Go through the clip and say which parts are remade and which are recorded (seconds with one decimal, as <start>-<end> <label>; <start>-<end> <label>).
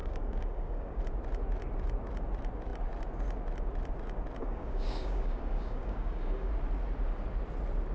0.0-1.0 remade; 1.0-4.4 recorded; 4.4-6.5 remade; 6.5-7.9 recorded